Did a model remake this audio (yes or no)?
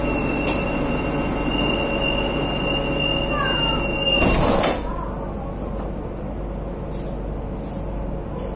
no